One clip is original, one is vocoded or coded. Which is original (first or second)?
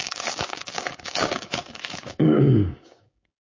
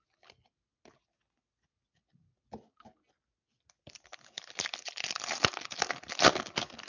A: second